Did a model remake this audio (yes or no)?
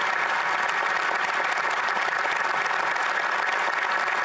no